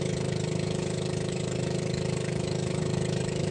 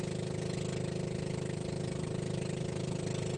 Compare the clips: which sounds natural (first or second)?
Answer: second